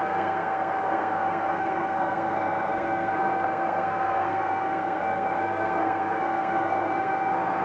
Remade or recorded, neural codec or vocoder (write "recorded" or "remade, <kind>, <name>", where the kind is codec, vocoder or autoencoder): remade, codec, SNAC